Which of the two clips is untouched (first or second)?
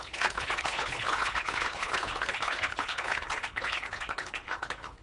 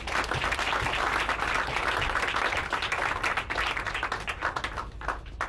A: second